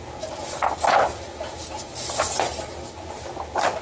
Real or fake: real